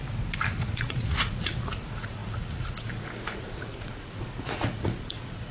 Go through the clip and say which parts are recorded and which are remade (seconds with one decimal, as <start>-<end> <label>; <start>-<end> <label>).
0.0-0.6 recorded; 0.6-5.5 remade